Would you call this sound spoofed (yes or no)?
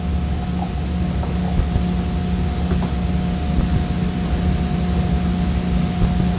no